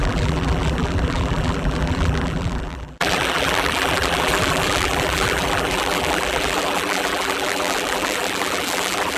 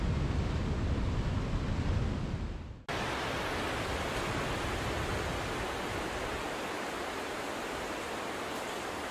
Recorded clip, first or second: second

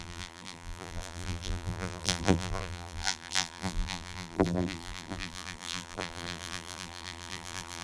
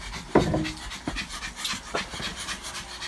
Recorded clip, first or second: second